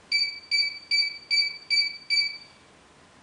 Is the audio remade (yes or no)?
no